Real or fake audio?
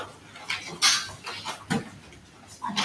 real